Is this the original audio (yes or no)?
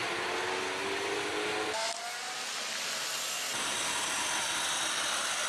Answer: yes